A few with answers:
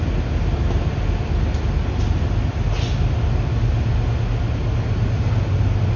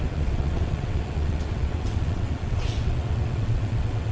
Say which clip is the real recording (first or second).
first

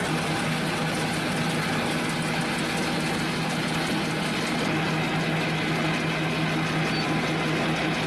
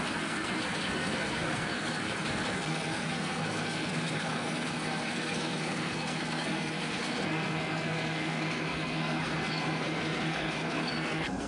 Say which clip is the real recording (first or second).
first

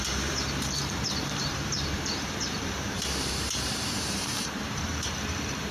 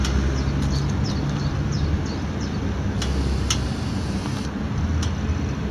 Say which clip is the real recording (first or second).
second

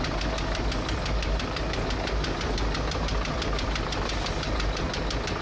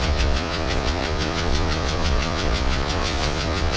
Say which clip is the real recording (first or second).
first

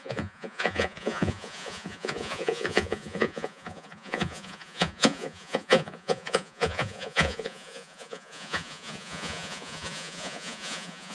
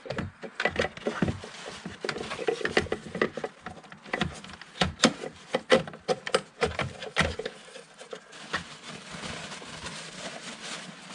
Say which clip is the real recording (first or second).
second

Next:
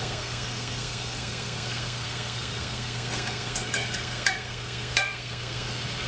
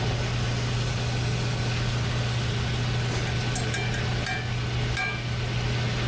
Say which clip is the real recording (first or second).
second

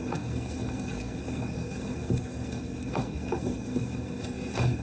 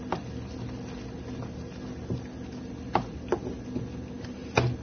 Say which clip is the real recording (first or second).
second